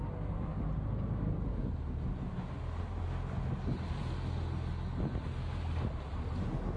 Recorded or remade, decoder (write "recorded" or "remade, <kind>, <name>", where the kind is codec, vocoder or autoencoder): recorded